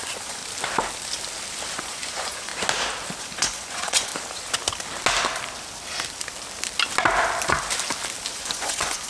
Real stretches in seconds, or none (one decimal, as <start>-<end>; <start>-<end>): 0.4-1.8; 2.5-3.2; 4.1-8.3